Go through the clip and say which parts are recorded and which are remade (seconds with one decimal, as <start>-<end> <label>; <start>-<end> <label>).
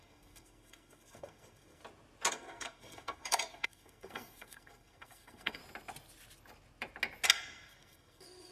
0.0-1.8 remade; 1.8-2.3 recorded; 2.3-5.6 remade; 5.6-7.3 recorded; 7.3-8.5 remade